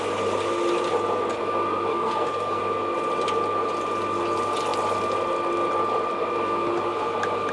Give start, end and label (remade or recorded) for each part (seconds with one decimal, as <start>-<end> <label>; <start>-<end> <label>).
0.0-1.9 recorded; 1.9-2.6 remade; 2.6-7.5 recorded

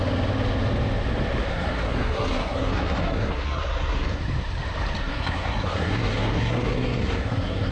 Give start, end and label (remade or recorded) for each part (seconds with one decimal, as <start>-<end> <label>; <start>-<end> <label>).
0.0-1.5 recorded; 1.5-4.2 remade; 4.2-5.0 recorded; 5.0-7.7 remade

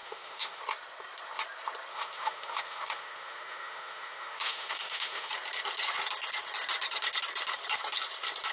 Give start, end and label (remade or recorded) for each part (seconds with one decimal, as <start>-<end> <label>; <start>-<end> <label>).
0.0-0.6 remade; 0.6-1.9 recorded; 1.9-5.3 remade; 5.3-8.5 recorded

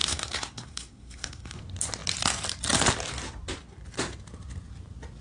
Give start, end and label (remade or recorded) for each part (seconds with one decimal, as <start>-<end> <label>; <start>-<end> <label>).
0.0-1.6 remade; 1.6-5.2 recorded

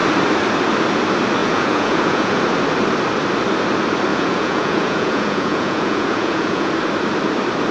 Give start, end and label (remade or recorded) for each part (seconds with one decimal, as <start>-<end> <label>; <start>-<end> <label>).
0.0-1.4 recorded; 1.4-2.4 remade; 2.4-4.1 recorded; 4.1-6.7 remade; 6.7-7.7 recorded

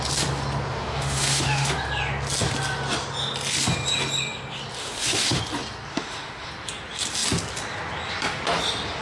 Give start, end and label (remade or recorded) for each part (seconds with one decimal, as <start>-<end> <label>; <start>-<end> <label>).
0.0-0.7 recorded; 0.7-1.7 remade; 1.7-4.8 recorded; 4.8-5.4 remade; 5.4-5.9 recorded; 5.9-6.5 remade; 6.5-9.0 recorded

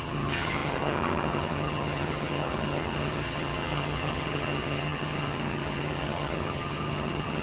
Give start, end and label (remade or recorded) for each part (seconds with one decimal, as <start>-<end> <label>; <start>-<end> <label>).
0.0-7.4 remade